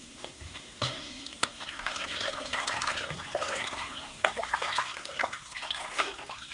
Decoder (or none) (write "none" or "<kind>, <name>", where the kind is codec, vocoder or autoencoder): codec, SNAC